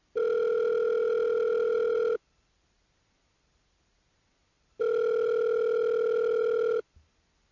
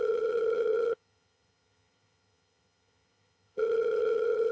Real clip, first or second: first